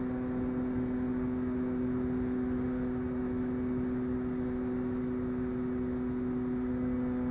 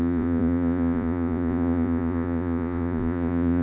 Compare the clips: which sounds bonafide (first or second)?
first